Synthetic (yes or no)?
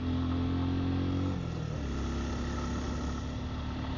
no